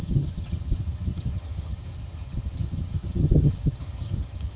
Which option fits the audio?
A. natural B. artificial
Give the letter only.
B